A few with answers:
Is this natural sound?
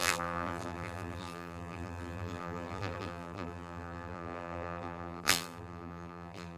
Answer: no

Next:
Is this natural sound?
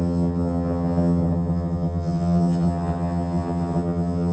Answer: no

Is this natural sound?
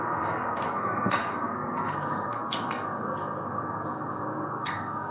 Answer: no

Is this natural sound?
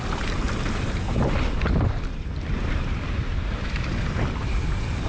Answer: no